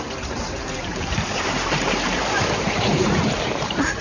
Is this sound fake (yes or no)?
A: yes